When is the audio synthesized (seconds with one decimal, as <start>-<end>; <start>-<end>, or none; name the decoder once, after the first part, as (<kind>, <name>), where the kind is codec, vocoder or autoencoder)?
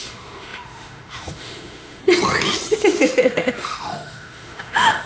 0.0-2.0 (autoencoder, DAC-VAE); 2.8-5.1